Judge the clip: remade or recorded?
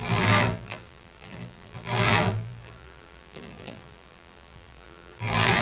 remade